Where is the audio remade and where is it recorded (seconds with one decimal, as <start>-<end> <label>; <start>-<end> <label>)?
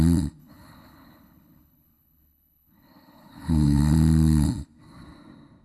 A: 0.0-0.4 recorded; 0.4-3.8 remade; 3.8-5.6 recorded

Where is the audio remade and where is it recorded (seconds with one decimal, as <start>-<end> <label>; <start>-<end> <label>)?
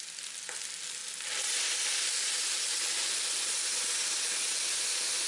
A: 0.0-5.3 recorded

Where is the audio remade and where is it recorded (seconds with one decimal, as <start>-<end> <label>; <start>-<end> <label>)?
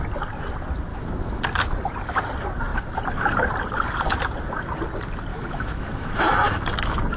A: 0.0-0.9 recorded; 0.9-1.4 remade; 1.4-5.3 recorded; 5.3-6.1 remade; 6.1-7.2 recorded